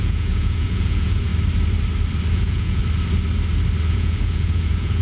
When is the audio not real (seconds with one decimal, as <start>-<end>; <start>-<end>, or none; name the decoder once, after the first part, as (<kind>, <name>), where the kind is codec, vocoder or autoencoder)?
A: 0.0-1.3 (vocoder, Vocos); 2.3-2.8; 3.9-5.0